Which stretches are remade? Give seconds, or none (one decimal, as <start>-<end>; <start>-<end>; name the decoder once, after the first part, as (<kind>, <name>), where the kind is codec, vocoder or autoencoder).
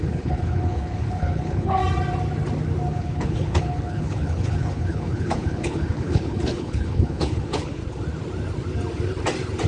0.0-1.8 (codec, HILCodec); 2.9-7.8